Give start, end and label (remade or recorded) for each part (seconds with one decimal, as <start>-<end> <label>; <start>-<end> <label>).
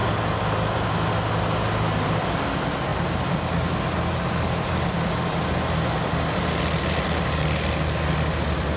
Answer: 0.0-2.0 recorded; 2.0-8.8 remade